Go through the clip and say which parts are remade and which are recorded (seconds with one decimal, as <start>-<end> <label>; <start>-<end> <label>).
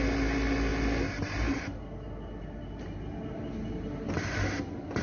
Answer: 0.0-5.0 recorded